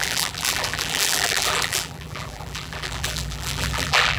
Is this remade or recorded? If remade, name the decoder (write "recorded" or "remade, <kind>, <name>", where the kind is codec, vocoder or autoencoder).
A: remade, vocoder, BigVGAN v2